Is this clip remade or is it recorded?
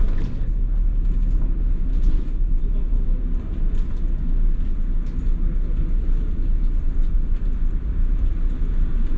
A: recorded